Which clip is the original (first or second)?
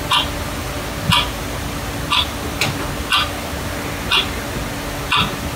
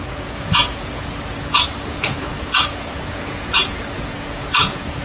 first